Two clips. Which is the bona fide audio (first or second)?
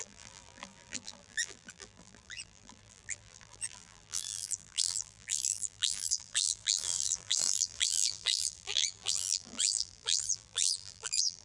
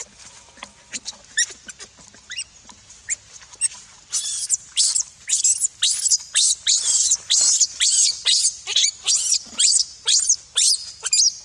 second